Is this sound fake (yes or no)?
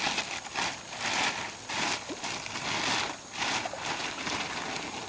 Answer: no